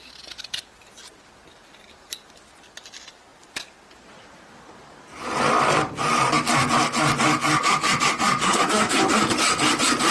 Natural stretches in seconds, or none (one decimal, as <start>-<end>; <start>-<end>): 0.0-8.4; 9.0-10.1